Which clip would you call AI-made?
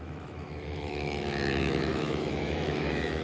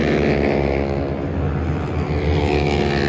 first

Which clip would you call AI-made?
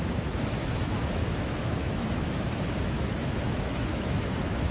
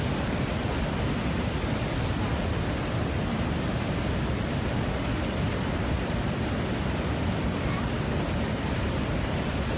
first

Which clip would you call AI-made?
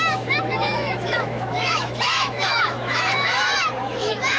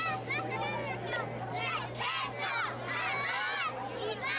first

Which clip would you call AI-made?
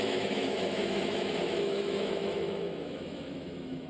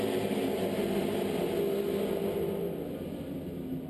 first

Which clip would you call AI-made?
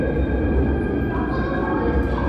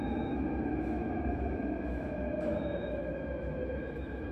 second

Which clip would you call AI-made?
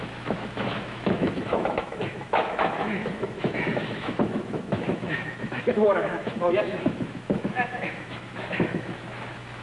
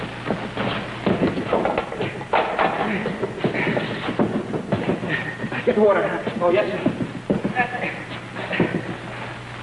first